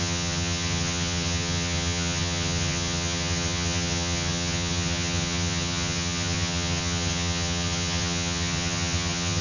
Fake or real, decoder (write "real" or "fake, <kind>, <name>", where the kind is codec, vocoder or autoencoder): fake, vocoder, HiFi-GAN